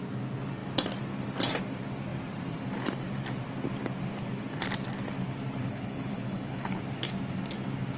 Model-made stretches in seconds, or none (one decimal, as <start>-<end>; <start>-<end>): 5.6-6.8